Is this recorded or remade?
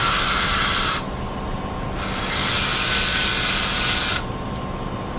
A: recorded